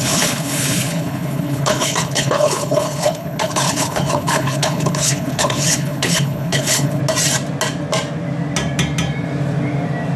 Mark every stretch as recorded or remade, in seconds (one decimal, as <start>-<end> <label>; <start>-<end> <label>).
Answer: 0.0-7.0 remade; 7.0-10.2 recorded